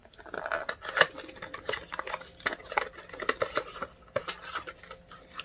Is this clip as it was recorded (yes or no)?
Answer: yes